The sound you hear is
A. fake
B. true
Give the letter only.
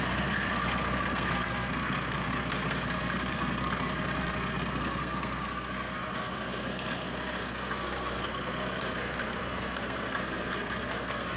A